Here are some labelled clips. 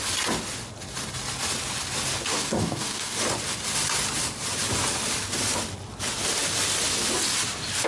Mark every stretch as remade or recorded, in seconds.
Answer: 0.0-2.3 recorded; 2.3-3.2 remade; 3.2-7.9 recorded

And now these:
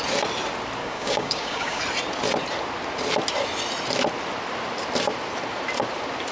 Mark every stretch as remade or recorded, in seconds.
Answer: 0.0-0.8 recorded; 0.8-1.8 remade; 1.8-6.3 recorded

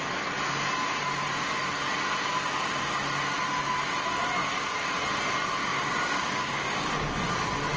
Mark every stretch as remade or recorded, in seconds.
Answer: 0.0-2.3 recorded; 2.3-3.0 remade; 3.0-4.4 recorded; 4.4-4.9 remade; 4.9-5.6 recorded; 5.6-7.1 remade; 7.1-7.8 recorded

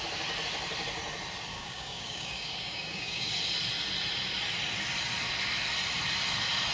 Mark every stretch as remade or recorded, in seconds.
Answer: 0.0-1.5 recorded; 1.5-3.3 remade; 3.3-6.7 recorded

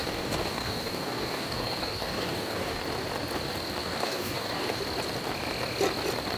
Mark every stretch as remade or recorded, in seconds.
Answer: 0.0-2.8 remade; 2.8-3.8 recorded; 3.8-4.8 remade; 4.8-6.4 recorded

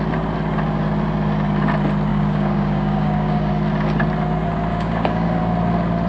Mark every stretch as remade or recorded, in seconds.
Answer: 0.0-2.1 recorded; 2.1-3.5 remade; 3.5-4.7 recorded; 4.7-5.4 remade; 5.4-6.1 recorded